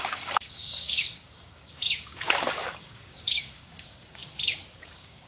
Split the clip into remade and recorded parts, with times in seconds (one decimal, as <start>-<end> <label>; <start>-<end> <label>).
0.0-4.2 remade; 4.2-4.8 recorded; 4.8-5.3 remade